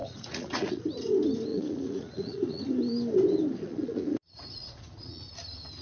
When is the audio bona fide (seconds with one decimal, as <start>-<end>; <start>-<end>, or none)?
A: 0.8-1.5; 2.6-3.6; 5.3-5.8